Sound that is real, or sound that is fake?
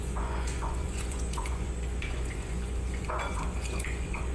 fake